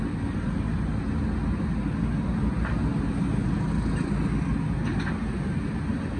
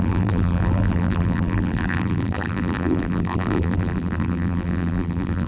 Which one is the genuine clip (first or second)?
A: first